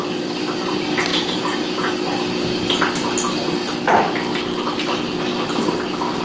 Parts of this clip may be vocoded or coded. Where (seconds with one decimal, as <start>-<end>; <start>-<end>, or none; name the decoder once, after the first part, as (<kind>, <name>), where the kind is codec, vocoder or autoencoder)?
1.1-1.9 (vocoder, Vocos)